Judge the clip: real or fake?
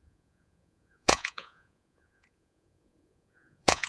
fake